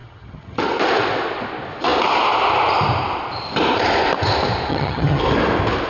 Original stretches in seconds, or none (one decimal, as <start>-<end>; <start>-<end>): 0.6-4.7; 5.2-5.9